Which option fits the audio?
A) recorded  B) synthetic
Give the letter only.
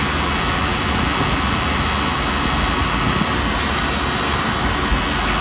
A